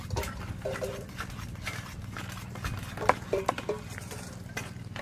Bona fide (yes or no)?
yes